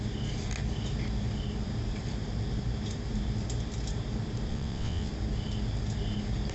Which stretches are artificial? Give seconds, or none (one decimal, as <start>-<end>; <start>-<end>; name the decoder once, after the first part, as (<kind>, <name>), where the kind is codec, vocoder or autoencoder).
4.5-5.1 (vocoder, WaveNeXt)